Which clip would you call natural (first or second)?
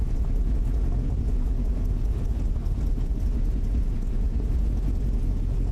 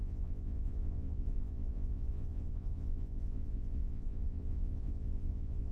first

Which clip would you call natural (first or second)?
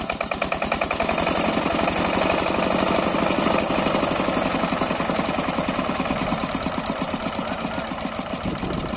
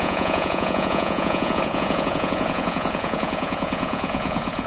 first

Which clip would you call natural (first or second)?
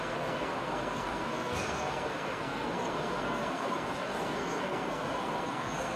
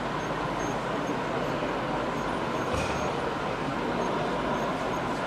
second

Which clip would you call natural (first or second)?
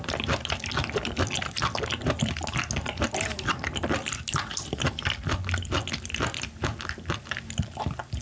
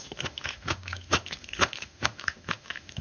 first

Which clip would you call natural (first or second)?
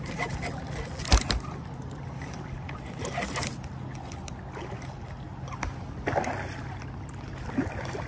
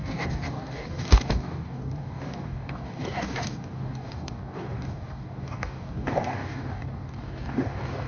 first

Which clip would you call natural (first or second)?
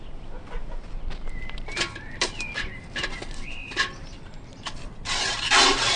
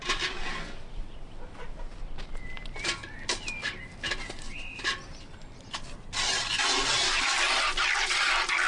second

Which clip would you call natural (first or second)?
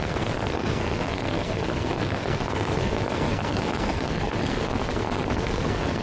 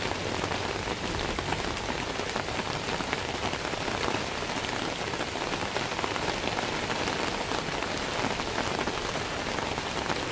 second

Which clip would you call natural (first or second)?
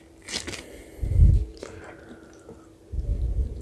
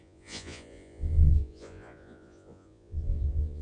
first